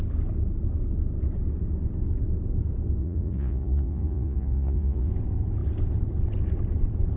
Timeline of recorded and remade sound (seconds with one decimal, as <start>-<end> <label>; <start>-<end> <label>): 0.0-3.0 recorded; 3.0-5.1 remade; 5.1-7.2 recorded